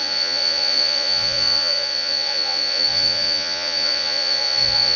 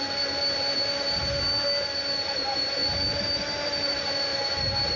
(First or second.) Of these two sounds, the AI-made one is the first